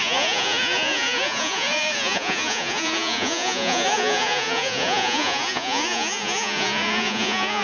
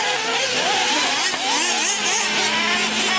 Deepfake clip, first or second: first